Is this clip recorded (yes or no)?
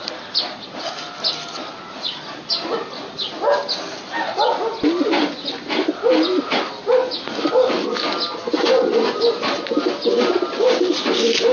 yes